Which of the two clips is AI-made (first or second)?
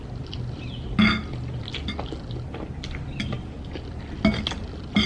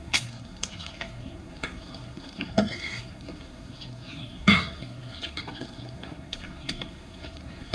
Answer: second